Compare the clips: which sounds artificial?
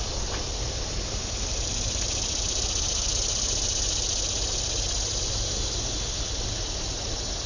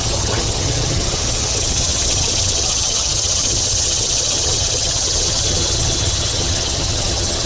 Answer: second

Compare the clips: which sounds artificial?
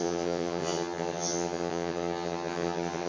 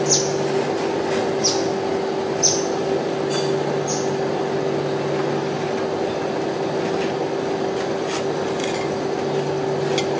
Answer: first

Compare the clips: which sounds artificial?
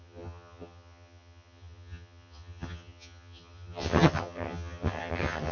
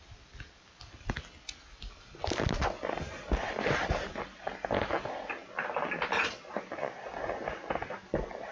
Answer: first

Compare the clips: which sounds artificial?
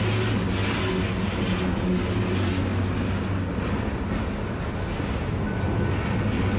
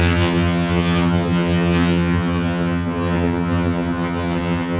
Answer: second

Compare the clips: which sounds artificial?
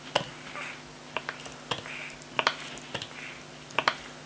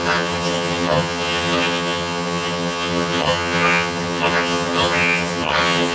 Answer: second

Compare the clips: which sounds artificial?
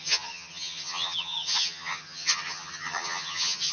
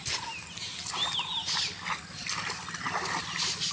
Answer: first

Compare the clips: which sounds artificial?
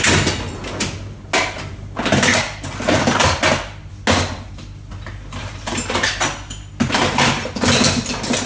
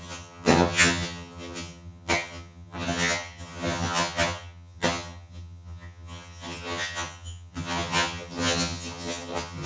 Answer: second